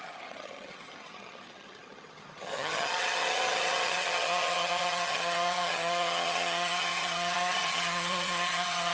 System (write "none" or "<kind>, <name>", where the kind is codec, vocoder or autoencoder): vocoder, HiFi-GAN